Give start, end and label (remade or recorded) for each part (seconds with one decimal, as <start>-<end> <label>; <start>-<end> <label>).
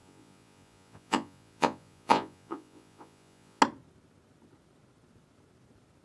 0.0-3.6 remade; 3.6-6.0 recorded